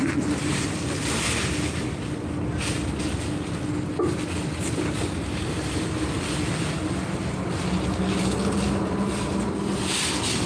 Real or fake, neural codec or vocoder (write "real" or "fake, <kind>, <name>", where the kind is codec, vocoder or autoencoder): real